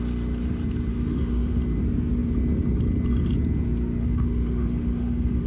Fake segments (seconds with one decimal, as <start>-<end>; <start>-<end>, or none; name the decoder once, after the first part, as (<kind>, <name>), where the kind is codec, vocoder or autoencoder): 0.9-1.6 (autoencoder, DAC-VAE); 4.0-5.5